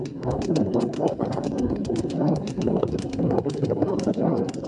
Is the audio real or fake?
fake